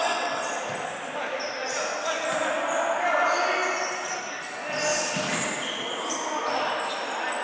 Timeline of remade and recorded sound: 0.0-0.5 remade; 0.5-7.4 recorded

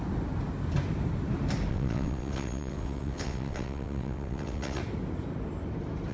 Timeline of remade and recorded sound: 0.0-1.7 recorded; 1.7-4.8 remade; 4.8-6.1 recorded

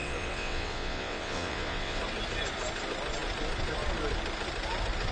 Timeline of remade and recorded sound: 0.0-2.0 remade; 2.0-5.1 recorded